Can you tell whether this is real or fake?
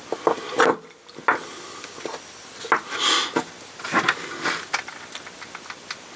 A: real